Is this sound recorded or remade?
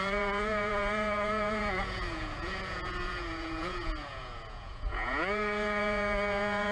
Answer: remade